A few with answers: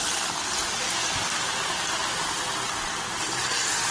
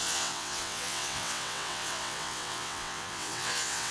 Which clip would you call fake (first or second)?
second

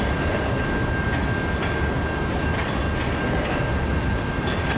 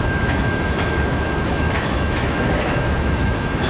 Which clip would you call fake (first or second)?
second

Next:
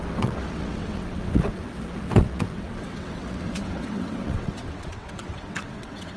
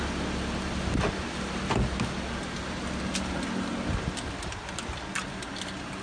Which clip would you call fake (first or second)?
first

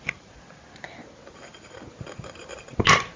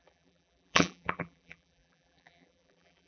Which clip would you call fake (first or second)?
second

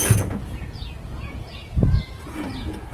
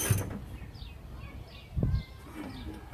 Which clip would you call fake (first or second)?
first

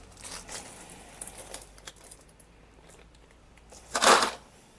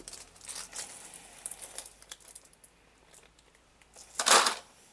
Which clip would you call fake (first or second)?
first